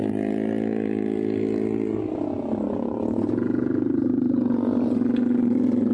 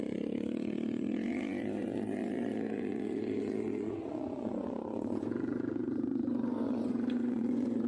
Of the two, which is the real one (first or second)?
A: first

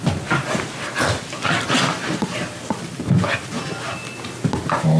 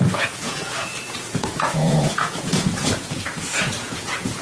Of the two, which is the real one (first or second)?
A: first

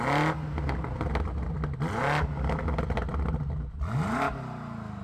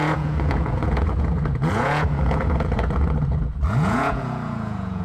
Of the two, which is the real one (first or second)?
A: first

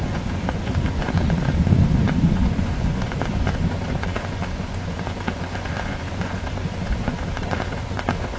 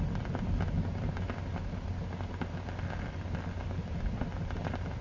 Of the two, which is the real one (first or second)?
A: second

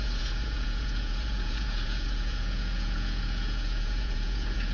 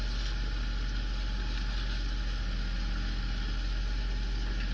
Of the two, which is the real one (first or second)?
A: second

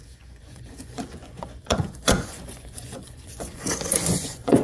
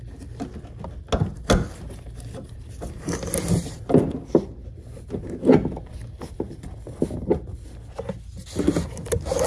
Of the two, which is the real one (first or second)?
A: second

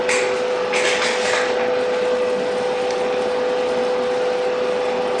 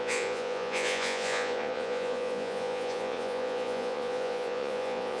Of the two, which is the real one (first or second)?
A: first